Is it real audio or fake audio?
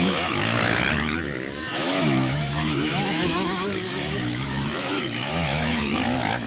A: fake